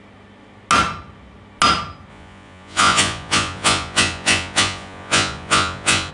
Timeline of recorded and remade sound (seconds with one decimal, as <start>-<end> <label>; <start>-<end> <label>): 0.0-2.1 recorded; 2.1-6.1 remade